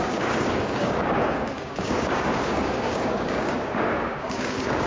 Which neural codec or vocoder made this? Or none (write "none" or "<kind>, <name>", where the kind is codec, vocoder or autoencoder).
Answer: codec, DAC